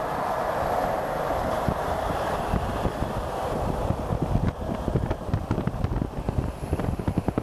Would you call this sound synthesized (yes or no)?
yes